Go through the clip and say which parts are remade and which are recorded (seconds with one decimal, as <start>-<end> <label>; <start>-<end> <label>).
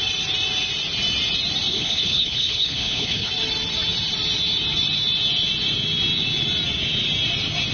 0.0-1.7 recorded; 1.7-3.3 remade; 3.3-7.7 recorded